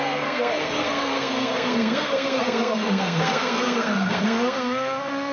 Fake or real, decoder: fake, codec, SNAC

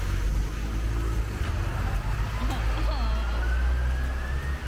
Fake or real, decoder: real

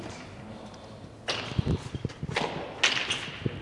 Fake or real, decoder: real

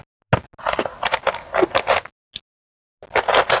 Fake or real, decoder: real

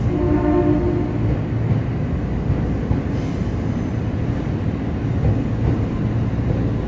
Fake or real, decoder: real